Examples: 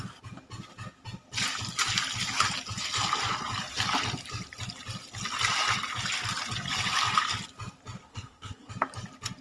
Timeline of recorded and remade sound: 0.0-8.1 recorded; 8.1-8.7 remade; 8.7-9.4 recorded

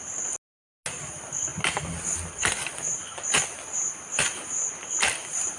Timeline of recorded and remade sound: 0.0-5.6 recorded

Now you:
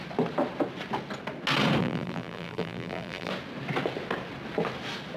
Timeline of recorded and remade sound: 0.0-1.8 recorded; 1.8-3.3 remade; 3.3-5.2 recorded

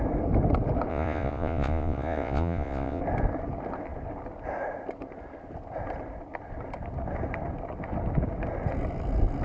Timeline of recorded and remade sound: 0.0-0.9 recorded; 0.9-3.0 remade; 3.0-9.4 recorded

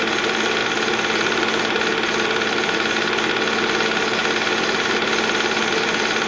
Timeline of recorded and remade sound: 0.0-0.6 recorded; 0.6-3.3 remade; 3.3-4.2 recorded; 4.2-5.7 remade; 5.7-6.3 recorded